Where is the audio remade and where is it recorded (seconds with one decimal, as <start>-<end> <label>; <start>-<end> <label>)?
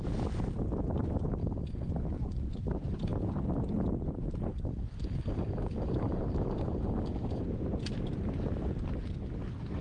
0.0-1.4 recorded; 1.4-1.9 remade; 1.9-4.5 recorded; 4.5-7.4 remade; 7.4-9.8 recorded